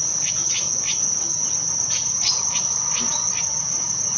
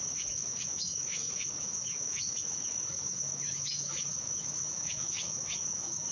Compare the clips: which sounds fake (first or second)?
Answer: second